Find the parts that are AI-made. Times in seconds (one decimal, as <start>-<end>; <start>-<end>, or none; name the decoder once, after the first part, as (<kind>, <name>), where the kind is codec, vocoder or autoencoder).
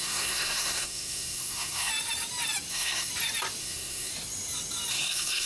0.0-1.9 (codec, SNAC); 2.7-3.1; 3.6-4.1; 4.9-5.5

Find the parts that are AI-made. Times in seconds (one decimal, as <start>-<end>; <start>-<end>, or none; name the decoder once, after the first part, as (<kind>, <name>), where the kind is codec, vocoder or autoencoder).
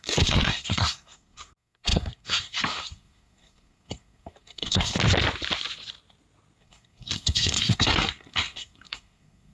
0.0-4.9 (codec, SNAC); 6.6-9.5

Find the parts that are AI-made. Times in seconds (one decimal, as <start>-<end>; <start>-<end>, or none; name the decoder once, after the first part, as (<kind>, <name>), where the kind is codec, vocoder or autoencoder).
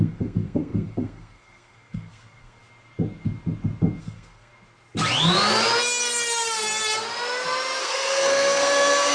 0.0-2.6 (codec, SNAC); 4.0-4.5; 7.8-9.1